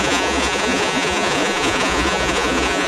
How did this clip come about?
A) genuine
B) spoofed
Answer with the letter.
B